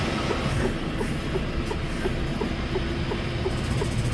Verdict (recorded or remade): recorded